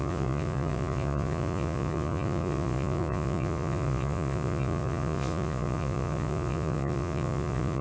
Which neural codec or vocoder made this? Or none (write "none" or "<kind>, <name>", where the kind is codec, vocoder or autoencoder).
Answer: vocoder, Vocos